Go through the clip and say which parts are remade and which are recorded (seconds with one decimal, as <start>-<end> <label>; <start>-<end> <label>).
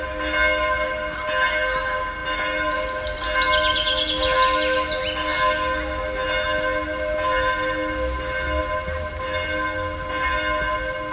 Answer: 0.0-11.1 recorded